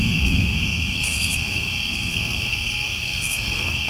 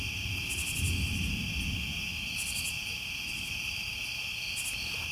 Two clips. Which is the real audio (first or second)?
second